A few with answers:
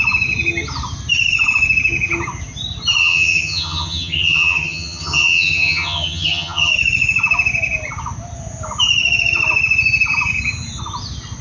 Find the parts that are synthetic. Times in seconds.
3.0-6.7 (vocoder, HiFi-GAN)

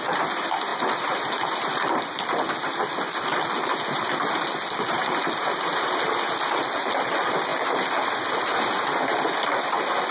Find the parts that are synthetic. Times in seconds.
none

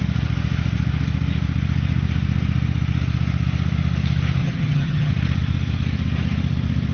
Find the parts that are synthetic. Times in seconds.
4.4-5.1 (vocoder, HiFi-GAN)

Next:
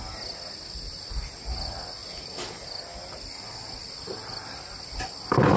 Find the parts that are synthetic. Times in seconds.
none

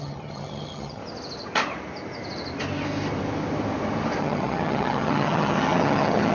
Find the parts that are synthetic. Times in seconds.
0.0-1.0 (vocoder, HiFi-GAN); 4.2-6.3